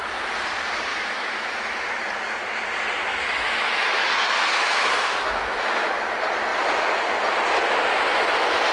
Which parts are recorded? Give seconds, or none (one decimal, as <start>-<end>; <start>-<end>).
0.0-0.9; 1.9-3.1; 5.9-8.7